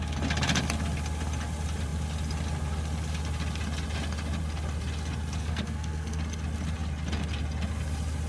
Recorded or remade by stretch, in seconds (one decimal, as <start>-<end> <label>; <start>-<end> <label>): 0.0-5.4 recorded; 5.4-6.2 remade; 6.2-8.3 recorded